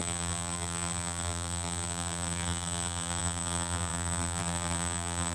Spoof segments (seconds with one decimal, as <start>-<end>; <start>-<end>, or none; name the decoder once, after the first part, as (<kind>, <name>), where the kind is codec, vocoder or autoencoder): 0.0-5.3 (vocoder, BigVGAN v2)